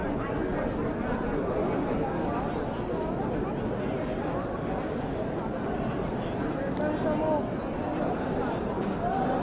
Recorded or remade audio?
recorded